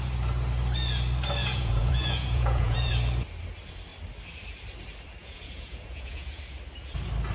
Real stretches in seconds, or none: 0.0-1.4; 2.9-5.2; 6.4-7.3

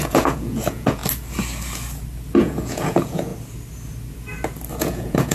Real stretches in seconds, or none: 1.0-2.3; 3.3-4.8

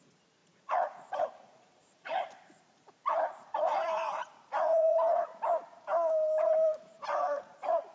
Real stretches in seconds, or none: 5.3-6.8